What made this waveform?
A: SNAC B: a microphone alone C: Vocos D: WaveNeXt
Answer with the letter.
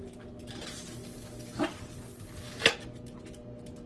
B